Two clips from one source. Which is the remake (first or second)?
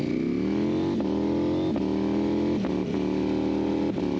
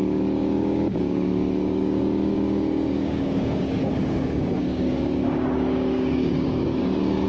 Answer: second